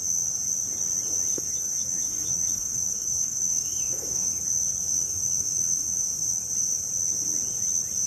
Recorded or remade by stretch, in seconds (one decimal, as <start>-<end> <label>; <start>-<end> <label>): 0.0-1.3 recorded; 1.3-4.4 remade; 4.4-4.9 recorded; 4.9-6.3 remade; 6.3-8.1 recorded